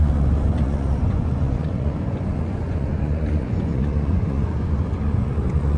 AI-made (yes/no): yes